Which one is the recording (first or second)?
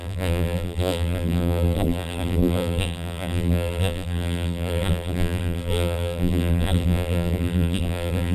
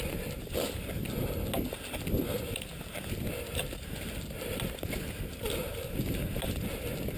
second